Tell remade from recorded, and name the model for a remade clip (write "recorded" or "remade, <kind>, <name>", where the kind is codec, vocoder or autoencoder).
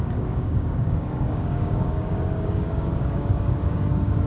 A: remade, codec, DAC